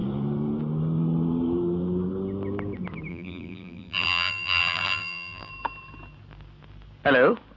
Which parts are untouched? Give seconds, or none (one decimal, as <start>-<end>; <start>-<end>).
0.0-3.1; 5.5-7.6